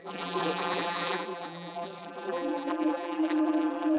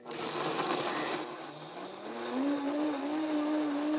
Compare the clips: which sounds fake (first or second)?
first